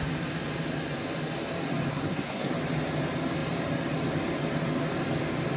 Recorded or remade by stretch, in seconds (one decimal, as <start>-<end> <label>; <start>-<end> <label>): 0.0-1.9 recorded; 1.9-2.5 remade; 2.5-5.6 recorded